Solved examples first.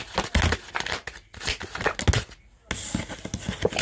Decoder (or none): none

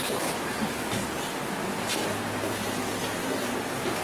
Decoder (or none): none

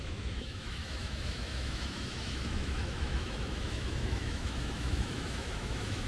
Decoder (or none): autoencoder, DAC-VAE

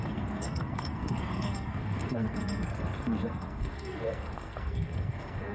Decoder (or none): codec, SNAC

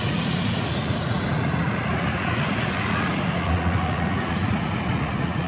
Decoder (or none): vocoder, Vocos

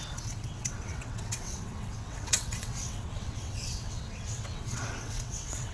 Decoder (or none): vocoder, WaveNeXt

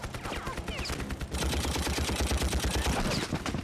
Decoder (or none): none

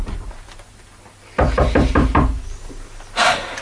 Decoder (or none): none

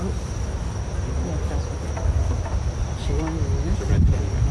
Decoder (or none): none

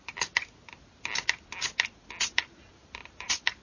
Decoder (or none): none